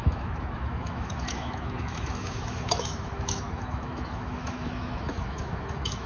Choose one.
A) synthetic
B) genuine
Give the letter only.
A